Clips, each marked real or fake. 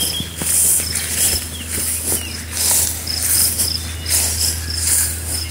real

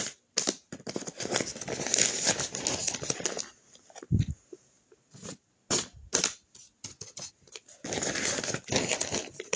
real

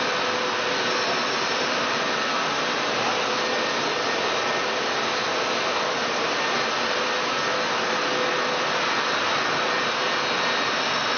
real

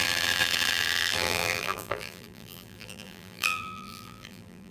fake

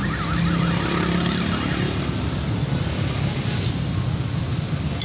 real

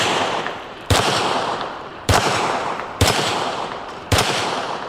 fake